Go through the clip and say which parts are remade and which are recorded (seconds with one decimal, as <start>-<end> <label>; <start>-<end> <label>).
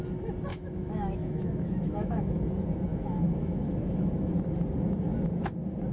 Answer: 0.0-0.5 recorded; 0.5-2.4 remade; 2.4-2.9 recorded; 2.9-4.3 remade; 4.3-5.9 recorded